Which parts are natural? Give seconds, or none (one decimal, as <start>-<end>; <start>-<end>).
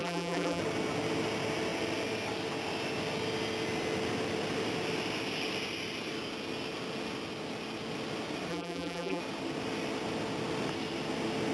0.6-8.5; 9.2-11.5